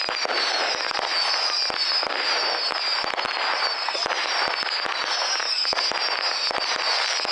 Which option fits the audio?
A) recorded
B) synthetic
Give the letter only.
A